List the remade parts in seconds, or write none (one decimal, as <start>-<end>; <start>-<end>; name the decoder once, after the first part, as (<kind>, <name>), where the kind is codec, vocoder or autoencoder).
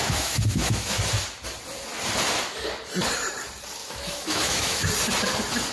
0.0-1.0 (autoencoder, DAC-VAE); 3.8-4.9